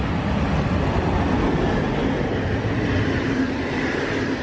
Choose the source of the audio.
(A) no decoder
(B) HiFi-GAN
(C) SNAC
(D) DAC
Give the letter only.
A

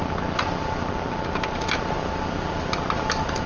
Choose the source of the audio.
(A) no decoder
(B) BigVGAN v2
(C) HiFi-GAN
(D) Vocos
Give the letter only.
A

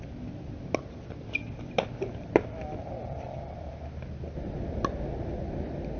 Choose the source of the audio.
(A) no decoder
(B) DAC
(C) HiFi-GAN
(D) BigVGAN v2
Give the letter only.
A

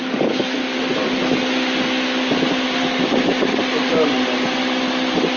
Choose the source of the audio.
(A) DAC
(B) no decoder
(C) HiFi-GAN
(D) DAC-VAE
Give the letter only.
B